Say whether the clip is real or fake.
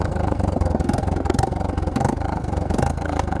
fake